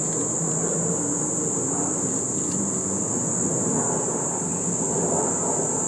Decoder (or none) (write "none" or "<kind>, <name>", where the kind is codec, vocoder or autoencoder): none